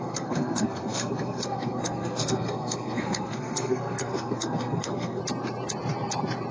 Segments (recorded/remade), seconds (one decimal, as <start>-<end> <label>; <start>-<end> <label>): 0.0-5.2 remade; 5.2-6.5 recorded